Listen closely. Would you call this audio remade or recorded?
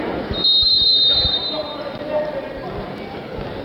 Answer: recorded